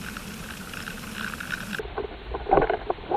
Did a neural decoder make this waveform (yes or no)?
no